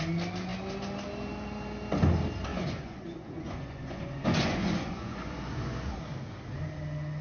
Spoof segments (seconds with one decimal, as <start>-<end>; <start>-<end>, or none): 2.5-6.0